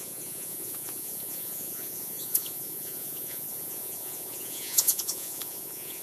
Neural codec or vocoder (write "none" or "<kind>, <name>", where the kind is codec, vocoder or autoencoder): vocoder, Vocos